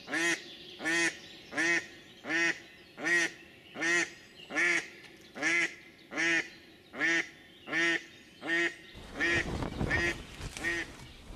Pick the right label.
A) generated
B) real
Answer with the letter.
B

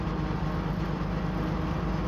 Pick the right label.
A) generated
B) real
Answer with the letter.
B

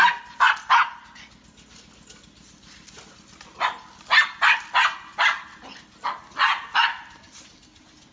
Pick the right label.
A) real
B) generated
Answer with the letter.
A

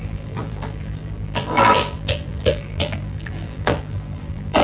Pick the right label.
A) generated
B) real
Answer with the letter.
A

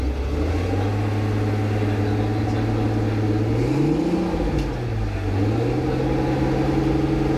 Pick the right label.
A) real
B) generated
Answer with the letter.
A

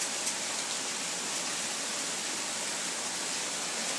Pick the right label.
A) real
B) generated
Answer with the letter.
A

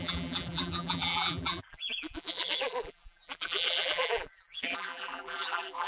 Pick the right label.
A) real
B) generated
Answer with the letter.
B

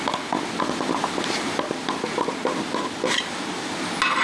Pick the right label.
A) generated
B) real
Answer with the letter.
B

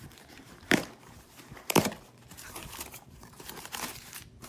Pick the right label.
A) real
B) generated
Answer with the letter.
B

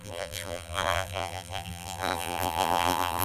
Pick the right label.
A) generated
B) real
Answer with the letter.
A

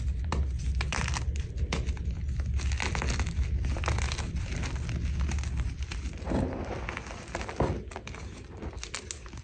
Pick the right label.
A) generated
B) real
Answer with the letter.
B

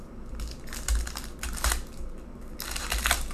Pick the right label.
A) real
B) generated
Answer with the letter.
A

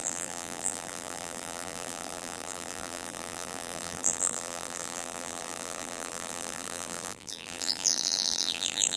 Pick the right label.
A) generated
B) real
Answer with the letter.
A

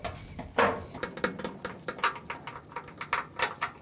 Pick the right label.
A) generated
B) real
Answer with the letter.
B